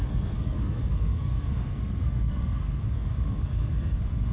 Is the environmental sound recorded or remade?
remade